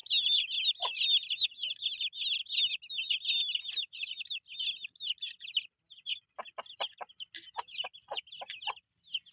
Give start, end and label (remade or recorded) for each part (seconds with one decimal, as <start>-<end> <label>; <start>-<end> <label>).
0.0-9.3 recorded